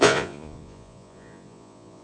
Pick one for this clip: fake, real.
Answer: fake